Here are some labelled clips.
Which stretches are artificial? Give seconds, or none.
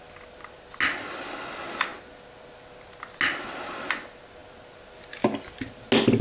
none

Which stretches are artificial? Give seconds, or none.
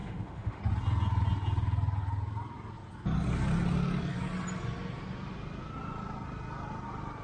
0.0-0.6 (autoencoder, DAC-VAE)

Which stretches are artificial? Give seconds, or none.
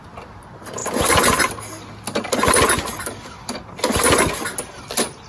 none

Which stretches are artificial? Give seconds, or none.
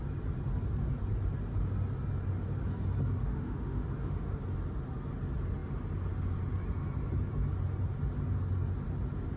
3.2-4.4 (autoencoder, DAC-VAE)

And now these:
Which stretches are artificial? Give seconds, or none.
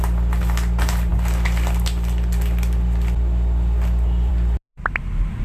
none